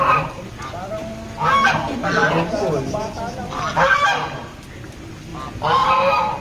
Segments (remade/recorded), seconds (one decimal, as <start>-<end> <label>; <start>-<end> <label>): 0.0-6.4 recorded